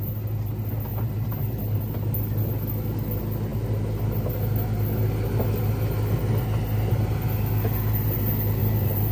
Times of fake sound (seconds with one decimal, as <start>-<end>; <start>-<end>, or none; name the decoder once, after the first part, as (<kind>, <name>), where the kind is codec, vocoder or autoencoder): 0.9-1.8 (vocoder, BigVGAN v2); 8.6-9.1